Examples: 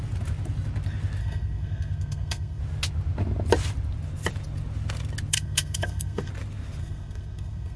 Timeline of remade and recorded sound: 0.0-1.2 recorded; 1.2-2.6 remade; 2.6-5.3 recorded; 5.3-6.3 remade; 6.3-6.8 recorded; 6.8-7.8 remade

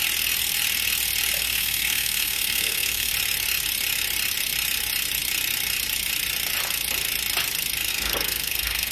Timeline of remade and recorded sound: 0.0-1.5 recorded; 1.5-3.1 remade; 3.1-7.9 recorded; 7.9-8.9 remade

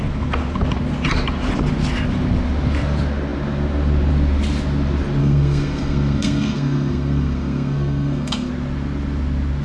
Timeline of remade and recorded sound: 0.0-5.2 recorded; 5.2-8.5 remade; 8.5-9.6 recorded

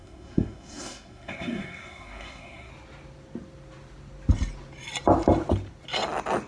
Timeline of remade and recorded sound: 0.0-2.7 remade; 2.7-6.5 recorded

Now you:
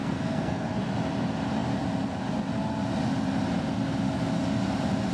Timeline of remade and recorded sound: 0.0-0.7 remade; 0.7-5.1 recorded

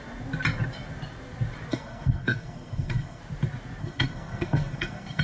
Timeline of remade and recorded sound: 0.0-1.7 recorded; 1.7-3.2 remade; 3.2-3.8 recorded; 3.8-5.2 remade

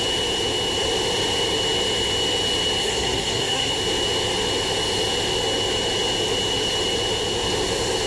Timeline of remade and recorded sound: 0.0-2.8 recorded; 2.8-3.7 remade; 3.7-8.1 recorded